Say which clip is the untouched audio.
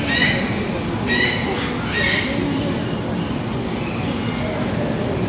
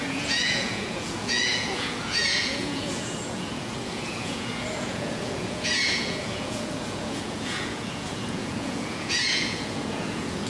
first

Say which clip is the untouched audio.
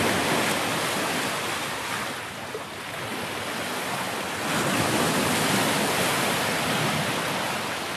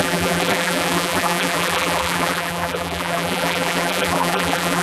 first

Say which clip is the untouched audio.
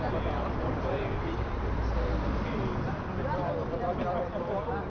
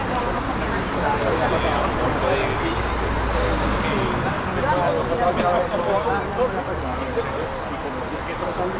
second